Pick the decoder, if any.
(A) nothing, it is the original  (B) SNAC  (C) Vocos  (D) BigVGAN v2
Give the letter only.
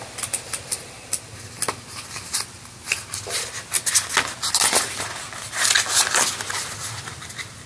A